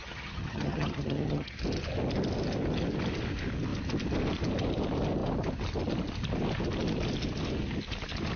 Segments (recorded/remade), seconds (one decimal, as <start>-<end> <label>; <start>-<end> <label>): 0.0-1.6 remade; 1.6-8.4 recorded